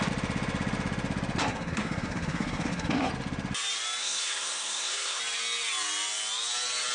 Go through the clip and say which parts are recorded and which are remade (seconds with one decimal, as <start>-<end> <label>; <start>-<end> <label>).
0.0-1.4 recorded; 1.4-3.1 remade; 3.1-4.0 recorded; 4.0-5.2 remade; 5.2-6.9 recorded